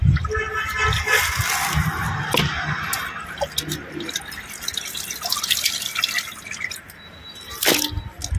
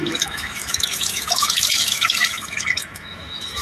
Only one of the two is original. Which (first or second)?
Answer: first